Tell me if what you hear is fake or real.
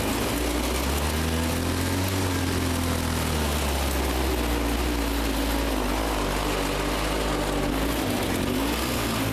real